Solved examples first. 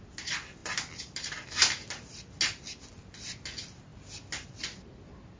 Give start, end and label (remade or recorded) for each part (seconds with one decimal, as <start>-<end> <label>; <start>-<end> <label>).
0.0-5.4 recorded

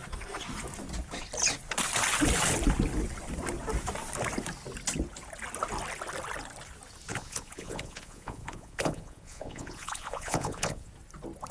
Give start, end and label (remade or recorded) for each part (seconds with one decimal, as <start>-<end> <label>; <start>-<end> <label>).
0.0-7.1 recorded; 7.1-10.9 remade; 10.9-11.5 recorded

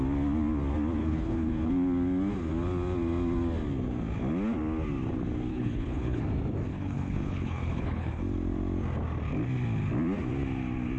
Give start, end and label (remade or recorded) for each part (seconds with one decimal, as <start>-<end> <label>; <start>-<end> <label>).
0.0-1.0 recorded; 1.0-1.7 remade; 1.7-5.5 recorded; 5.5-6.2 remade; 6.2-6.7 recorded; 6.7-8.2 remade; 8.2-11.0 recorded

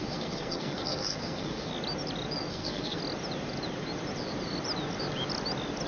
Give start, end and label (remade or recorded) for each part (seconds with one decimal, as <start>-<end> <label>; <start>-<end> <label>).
0.0-1.7 remade; 1.7-2.5 recorded; 2.5-3.0 remade; 3.0-5.9 recorded